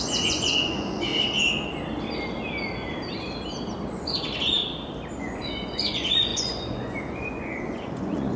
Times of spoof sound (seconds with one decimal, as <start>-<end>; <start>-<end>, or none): 0.0-1.1; 3.9-4.6; 5.2-8.4